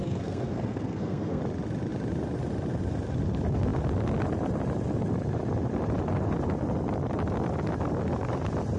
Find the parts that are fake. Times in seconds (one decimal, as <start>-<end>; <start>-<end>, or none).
0.0-1.4